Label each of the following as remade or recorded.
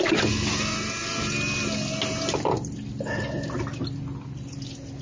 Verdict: recorded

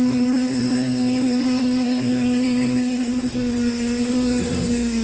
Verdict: remade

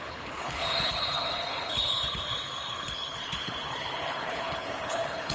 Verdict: remade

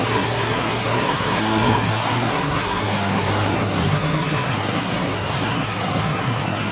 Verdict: remade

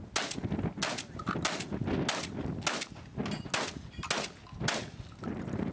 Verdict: recorded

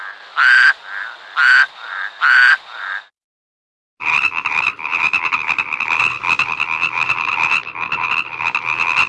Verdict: recorded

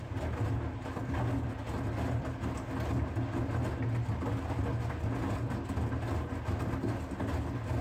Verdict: recorded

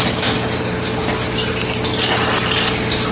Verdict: recorded